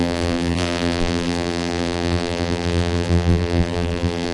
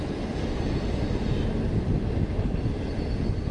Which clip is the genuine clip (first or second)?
second